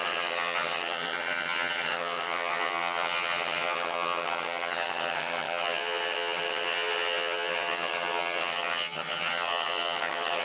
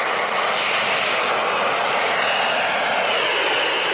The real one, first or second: second